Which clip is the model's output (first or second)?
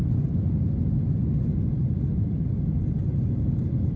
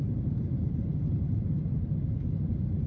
second